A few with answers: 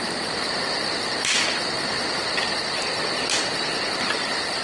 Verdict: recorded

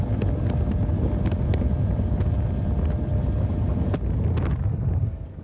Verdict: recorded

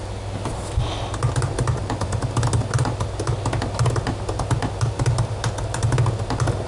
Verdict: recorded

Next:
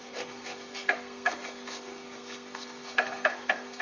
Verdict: remade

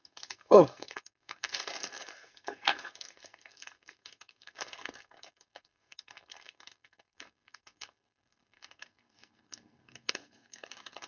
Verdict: remade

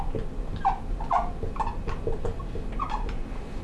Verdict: recorded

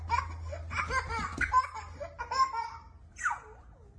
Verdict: recorded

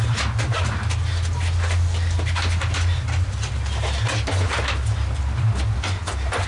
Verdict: recorded